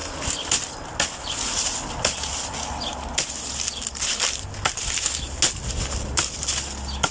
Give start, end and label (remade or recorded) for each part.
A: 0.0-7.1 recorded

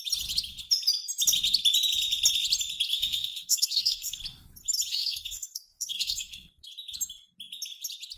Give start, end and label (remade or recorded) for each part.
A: 0.0-2.9 recorded; 2.9-4.2 remade; 4.2-4.9 recorded; 4.9-6.7 remade; 6.7-8.2 recorded

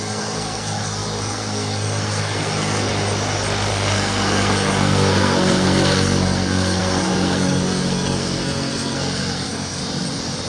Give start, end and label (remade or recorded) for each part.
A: 0.0-2.9 remade; 2.9-3.7 recorded; 3.7-9.8 remade; 9.8-10.5 recorded

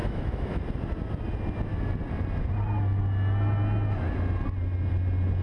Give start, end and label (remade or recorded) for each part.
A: 0.0-0.6 remade; 0.6-5.4 recorded

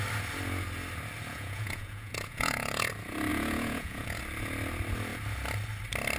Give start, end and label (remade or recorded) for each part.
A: 0.0-1.3 recorded; 1.3-2.9 remade; 2.9-3.3 recorded; 3.3-4.2 remade; 4.2-6.2 recorded

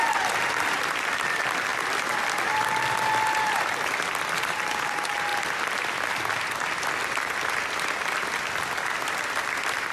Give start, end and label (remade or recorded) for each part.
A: 0.0-9.9 recorded

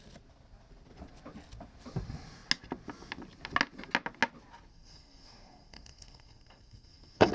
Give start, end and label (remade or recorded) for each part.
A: 0.0-4.7 recorded; 4.7-7.3 remade

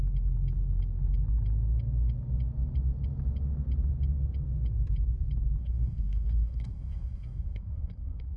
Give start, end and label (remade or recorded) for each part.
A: 0.0-5.6 recorded; 5.6-8.4 remade